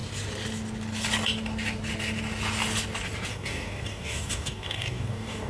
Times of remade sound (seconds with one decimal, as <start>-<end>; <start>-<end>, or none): 3.3-5.5